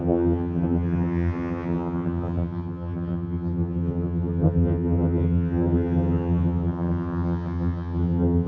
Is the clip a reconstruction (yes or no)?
yes